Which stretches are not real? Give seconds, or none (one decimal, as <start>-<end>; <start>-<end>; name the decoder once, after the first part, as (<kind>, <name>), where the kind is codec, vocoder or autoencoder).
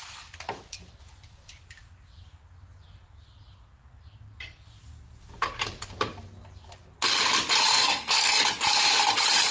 7.7-8.4 (codec, SNAC)